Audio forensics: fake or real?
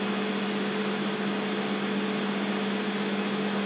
real